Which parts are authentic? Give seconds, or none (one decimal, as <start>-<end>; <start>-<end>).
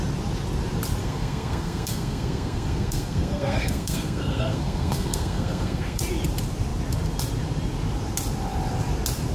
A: 0.0-1.0; 6.0-9.3